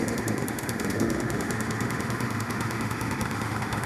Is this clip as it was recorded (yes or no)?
no